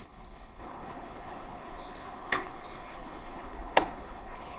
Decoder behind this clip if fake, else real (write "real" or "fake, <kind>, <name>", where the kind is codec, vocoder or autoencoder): fake, codec, HILCodec